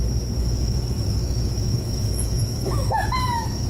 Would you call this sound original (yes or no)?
no